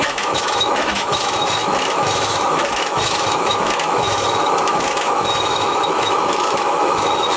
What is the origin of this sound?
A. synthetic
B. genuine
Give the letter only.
A